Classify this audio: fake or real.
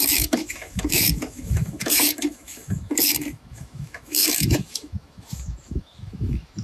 fake